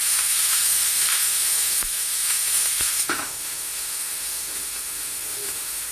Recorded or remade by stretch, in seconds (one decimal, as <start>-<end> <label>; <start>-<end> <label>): 0.0-5.9 remade